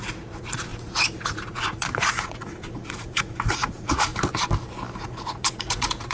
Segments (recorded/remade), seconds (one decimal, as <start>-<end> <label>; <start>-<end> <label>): 0.0-4.1 remade; 4.1-5.0 recorded; 5.0-6.1 remade

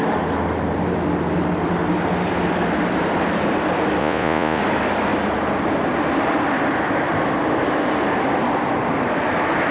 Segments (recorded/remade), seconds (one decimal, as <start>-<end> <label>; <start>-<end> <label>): 0.0-4.0 recorded; 4.0-4.6 remade; 4.6-9.7 recorded

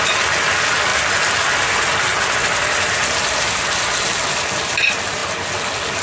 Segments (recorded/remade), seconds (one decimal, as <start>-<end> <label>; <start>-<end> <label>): 0.0-6.0 recorded

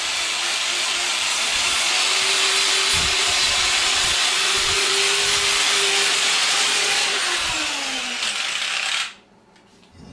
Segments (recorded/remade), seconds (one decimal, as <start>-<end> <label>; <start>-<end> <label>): 0.0-1.3 recorded; 1.3-1.9 remade; 1.9-2.9 recorded; 2.9-4.9 remade; 4.9-6.1 recorded; 6.1-7.2 remade; 7.2-10.1 recorded

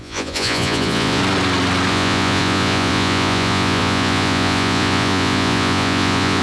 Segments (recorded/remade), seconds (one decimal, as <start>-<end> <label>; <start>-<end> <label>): 0.0-1.2 remade; 1.2-1.9 recorded; 1.9-6.4 remade

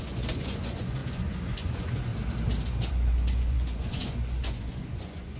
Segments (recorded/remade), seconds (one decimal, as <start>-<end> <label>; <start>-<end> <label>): 0.0-2.1 remade; 2.1-2.9 recorded; 2.9-5.4 remade

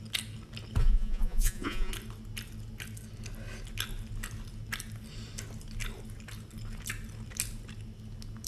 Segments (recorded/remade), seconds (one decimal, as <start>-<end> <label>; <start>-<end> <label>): 0.0-0.8 recorded; 0.8-1.9 remade; 1.9-8.5 recorded